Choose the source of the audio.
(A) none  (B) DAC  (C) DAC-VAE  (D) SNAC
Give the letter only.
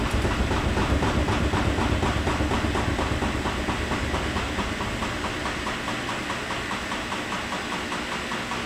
A